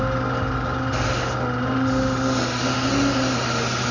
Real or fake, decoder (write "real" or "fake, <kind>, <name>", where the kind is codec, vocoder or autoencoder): real